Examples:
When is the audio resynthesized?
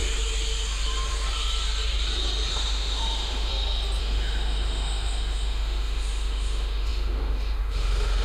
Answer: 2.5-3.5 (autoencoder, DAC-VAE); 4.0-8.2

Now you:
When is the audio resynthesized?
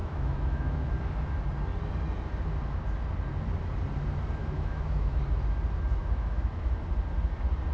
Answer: 0.0-0.9 (autoencoder, DAC-VAE); 4.4-5.2; 6.0-6.7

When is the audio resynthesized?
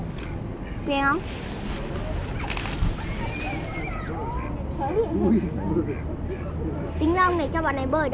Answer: none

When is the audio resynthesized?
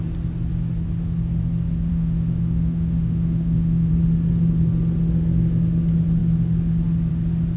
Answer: 1.9-3.9 (autoencoder, DAC-VAE)